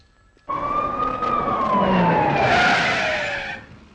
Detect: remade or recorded recorded